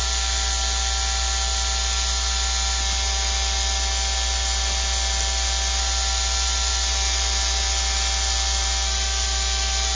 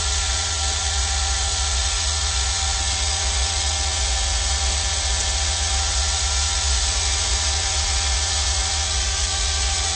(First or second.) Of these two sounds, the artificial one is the second